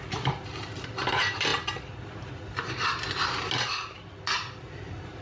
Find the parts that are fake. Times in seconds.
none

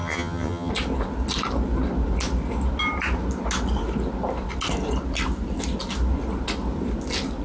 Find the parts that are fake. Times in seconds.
0.0-0.7 (vocoder, HiFi-GAN)